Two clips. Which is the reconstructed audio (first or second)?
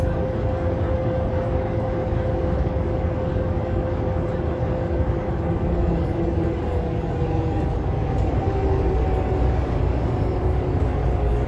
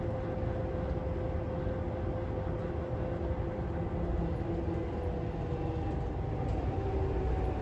first